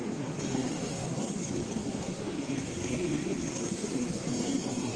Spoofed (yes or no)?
yes